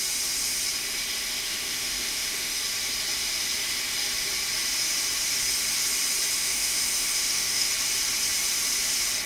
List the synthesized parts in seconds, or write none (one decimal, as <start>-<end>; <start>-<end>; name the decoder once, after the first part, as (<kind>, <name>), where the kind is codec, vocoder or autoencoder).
1.5-2.6 (autoencoder, DAC-VAE); 6.4-7.7